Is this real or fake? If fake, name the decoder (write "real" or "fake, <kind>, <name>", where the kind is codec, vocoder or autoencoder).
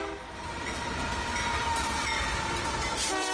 fake, vocoder, BigVGAN v2